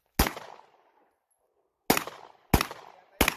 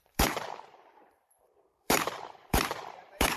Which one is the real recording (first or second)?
first